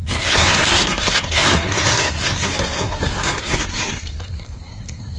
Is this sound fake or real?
fake